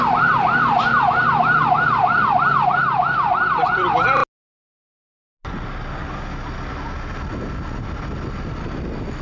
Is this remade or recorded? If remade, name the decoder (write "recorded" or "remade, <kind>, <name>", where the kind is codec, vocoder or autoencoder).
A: recorded